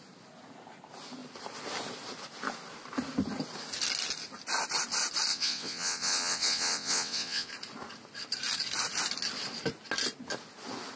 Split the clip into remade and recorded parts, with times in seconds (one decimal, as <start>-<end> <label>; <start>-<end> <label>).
0.0-5.3 recorded; 5.3-7.5 remade; 7.5-11.0 recorded